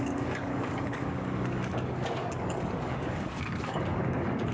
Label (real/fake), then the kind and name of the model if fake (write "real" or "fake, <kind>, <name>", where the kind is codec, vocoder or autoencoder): fake, codec, DAC